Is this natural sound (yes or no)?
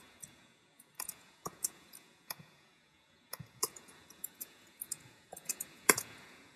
no